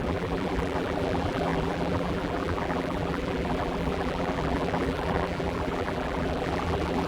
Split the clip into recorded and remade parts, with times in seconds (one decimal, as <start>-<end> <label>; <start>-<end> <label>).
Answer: 0.0-7.1 remade

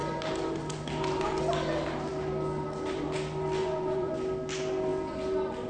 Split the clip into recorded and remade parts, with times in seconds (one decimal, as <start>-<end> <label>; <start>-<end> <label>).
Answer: 0.0-3.6 recorded; 3.6-4.1 remade; 4.1-5.7 recorded

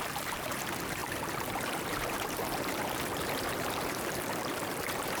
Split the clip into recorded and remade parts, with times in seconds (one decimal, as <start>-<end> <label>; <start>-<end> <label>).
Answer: 0.0-5.2 remade